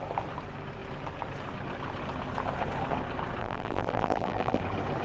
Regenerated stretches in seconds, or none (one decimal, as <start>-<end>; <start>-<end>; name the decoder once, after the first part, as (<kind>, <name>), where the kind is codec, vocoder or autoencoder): 3.4-4.6 (vocoder, BigVGAN v2)